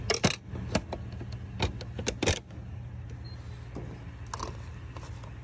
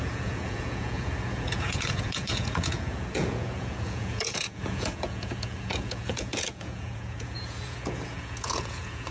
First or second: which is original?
first